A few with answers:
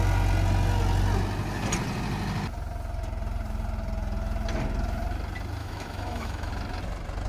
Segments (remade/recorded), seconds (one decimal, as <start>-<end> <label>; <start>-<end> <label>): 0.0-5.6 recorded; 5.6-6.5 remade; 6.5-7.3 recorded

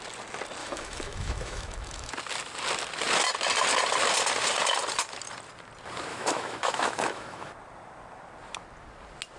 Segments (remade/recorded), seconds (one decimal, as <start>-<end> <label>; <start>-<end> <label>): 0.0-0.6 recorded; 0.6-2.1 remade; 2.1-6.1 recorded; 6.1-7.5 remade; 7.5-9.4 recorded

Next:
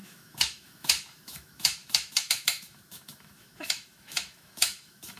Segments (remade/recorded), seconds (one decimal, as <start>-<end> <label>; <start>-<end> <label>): 0.0-5.2 remade

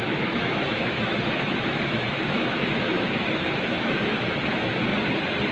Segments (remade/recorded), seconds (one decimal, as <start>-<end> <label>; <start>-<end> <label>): 0.0-4.9 remade; 4.9-5.5 recorded